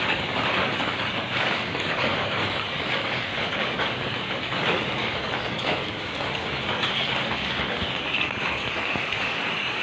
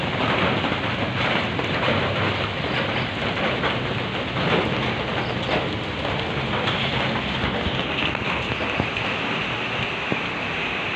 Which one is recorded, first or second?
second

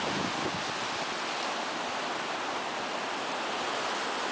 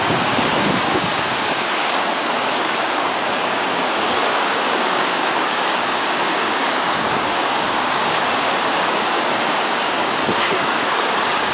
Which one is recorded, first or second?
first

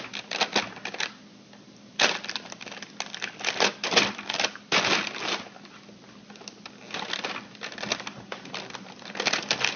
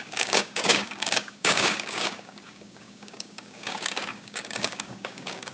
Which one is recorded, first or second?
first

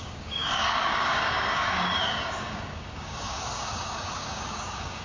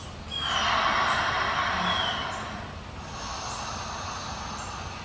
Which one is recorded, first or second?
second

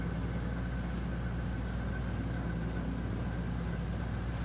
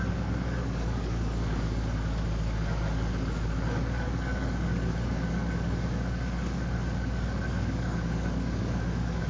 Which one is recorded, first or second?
first